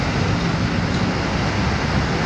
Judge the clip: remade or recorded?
recorded